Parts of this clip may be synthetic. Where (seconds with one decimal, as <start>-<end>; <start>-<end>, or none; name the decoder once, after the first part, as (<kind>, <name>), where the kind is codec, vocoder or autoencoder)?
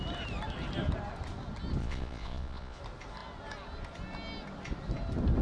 1.8-2.8 (vocoder, Vocos)